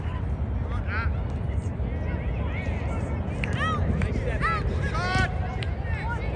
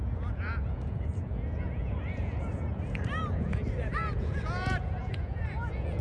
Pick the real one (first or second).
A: first